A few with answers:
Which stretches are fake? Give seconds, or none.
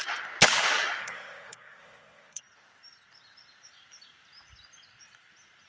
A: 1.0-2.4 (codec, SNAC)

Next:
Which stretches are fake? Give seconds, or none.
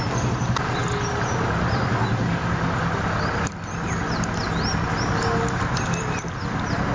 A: none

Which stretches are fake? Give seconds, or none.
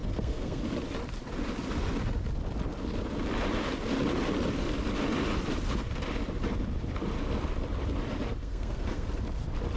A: 0.0-0.6 (codec, SNAC); 8.4-9.1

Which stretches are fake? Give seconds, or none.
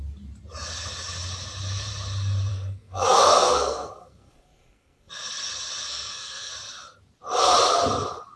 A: 2.5-5.1 (codec, SNAC); 5.9-6.5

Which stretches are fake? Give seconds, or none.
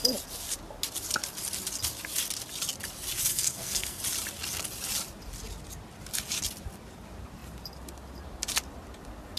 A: 3.3-4.0 (codec, SNAC)